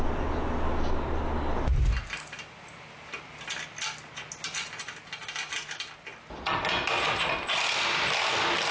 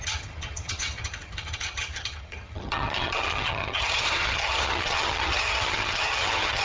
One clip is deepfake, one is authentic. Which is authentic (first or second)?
first